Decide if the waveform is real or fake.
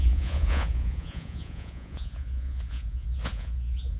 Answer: fake